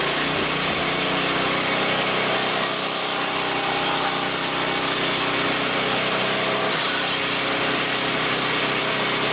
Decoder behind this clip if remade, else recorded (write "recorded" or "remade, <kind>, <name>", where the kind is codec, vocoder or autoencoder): recorded